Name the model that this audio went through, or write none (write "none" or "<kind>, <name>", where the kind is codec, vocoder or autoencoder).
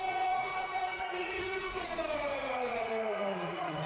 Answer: vocoder, Vocos